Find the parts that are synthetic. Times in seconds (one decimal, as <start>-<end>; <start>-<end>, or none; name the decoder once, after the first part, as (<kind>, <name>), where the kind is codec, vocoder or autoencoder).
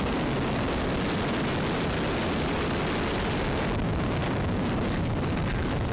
none